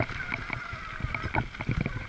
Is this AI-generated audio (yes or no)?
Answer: no